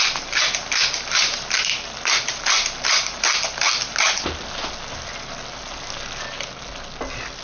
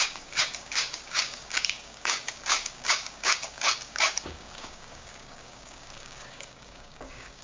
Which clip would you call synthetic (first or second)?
second